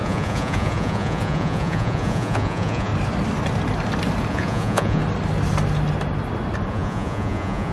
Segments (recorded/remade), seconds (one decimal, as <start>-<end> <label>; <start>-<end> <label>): 0.0-2.9 remade; 2.9-4.3 recorded; 4.3-5.0 remade; 5.0-6.7 recorded; 6.7-7.7 remade